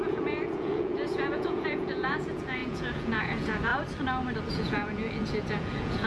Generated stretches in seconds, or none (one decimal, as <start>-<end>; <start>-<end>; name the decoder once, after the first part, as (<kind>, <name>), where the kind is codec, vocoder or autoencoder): 0.0-3.7 (vocoder, Vocos); 4.5-6.1